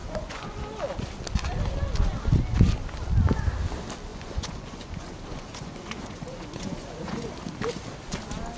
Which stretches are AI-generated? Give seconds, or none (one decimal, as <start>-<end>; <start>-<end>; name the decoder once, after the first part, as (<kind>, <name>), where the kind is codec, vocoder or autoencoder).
0.0-0.6 (vocoder, Vocos); 4.1-7.3